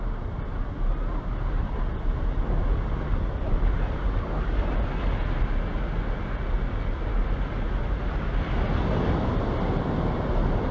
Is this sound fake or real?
real